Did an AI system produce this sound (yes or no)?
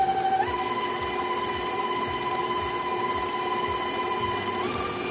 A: no